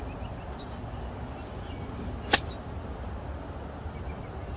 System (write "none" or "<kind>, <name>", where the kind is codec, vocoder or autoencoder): none